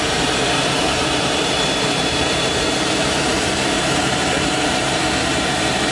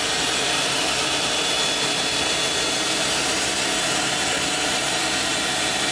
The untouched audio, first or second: second